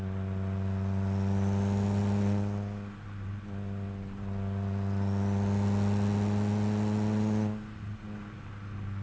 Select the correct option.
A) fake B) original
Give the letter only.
B